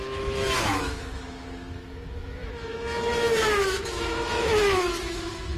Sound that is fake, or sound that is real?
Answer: fake